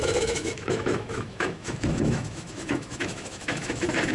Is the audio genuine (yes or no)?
no